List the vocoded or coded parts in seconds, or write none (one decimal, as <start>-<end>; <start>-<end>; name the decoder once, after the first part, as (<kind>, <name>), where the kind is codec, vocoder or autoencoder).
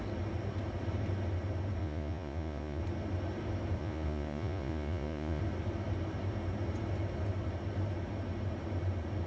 1.8-2.8 (vocoder, Vocos); 3.8-5.4